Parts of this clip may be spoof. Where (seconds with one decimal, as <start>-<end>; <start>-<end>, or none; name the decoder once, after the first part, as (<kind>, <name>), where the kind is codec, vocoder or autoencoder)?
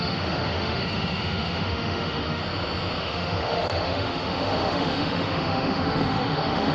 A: 0.0-2.4 (autoencoder, DAC-VAE); 3.0-6.7